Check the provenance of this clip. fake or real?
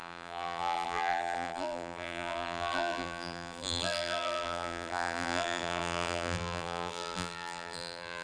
fake